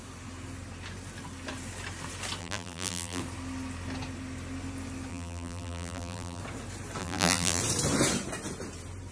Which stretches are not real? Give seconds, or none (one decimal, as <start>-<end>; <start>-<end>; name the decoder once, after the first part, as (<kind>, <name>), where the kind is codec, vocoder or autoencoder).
2.4-3.2 (vocoder, BigVGAN v2); 5.1-6.4; 7.0-7.6